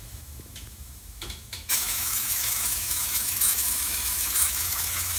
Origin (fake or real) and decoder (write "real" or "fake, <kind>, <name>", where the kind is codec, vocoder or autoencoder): fake, autoencoder, DAC-VAE